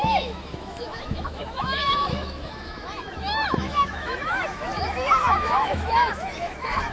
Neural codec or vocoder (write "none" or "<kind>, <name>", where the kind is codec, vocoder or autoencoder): autoencoder, DAC-VAE